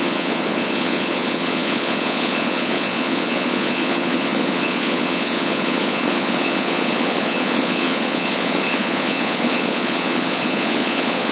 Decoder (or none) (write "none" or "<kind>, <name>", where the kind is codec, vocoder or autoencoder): vocoder, Vocos